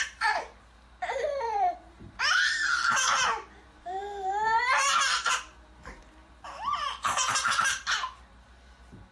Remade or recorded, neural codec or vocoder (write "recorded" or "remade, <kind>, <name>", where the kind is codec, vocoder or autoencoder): remade, vocoder, BigVGAN v2